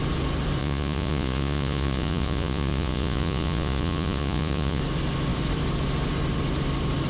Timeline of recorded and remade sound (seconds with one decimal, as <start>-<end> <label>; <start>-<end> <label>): 0.0-0.6 recorded; 0.6-4.8 remade; 4.8-7.1 recorded